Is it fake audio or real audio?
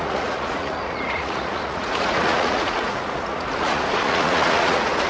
fake